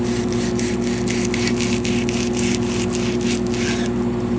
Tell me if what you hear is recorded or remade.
recorded